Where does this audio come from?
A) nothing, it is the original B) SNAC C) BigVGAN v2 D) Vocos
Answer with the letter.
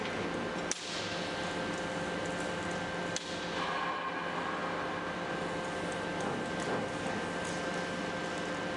A